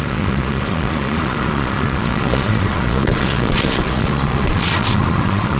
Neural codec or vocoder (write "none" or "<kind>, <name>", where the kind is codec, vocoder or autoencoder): vocoder, Vocos